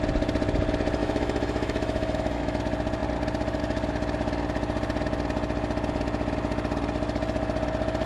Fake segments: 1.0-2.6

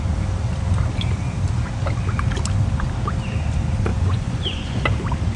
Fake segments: 3.9-4.8

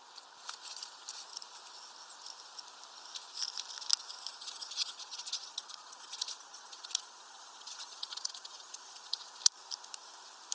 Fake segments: 4.3-9.3

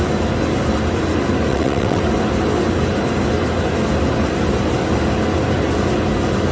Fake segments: 1.5-2.0